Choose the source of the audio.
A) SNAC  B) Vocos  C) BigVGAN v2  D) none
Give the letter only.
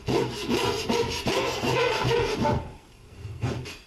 A